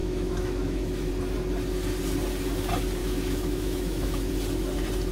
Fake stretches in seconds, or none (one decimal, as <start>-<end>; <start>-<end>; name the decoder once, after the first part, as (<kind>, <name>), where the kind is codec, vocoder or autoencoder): 0.0-1.1 (autoencoder, DAC-VAE); 3.0-4.3